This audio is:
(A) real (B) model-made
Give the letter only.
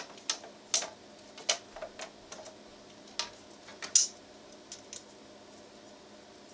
A